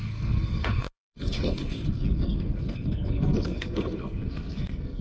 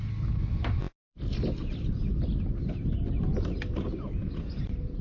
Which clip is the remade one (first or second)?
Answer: first